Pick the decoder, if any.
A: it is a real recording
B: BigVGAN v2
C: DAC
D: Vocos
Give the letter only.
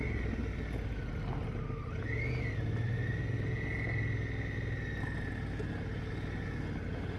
A